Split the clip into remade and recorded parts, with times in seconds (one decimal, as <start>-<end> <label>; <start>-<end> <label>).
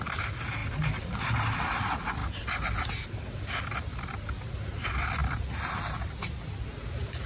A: 0.0-0.6 recorded; 0.6-1.8 remade; 1.8-7.3 recorded